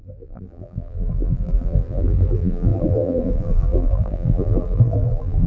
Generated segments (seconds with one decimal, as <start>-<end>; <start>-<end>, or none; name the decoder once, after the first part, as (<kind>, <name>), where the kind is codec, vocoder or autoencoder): 0.0-5.5 (vocoder, BigVGAN v2)